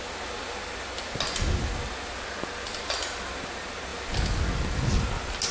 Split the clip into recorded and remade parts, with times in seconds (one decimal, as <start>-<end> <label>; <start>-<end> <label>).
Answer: 0.0-5.5 recorded